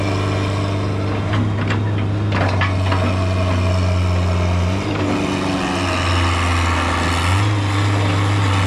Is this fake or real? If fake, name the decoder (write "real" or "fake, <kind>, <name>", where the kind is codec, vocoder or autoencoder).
real